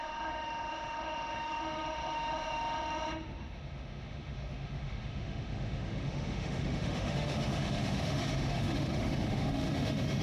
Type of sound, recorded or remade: remade